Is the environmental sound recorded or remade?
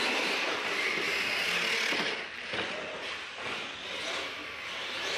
recorded